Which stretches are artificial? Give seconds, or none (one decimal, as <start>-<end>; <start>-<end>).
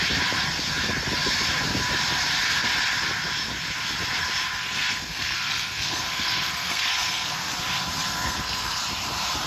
4.5-7.5; 8.0-8.8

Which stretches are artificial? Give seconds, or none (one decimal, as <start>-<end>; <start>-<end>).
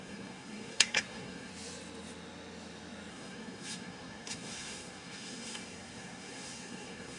0.0-1.5; 3.1-7.2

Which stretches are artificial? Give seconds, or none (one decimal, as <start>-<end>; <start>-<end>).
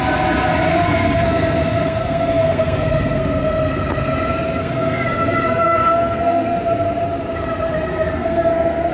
0.7-3.4; 4.6-6.6; 7.9-8.9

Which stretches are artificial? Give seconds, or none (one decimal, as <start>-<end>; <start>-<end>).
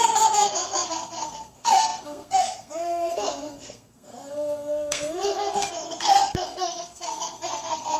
0.0-8.0